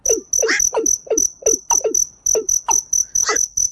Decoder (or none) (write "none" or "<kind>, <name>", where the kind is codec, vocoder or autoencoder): none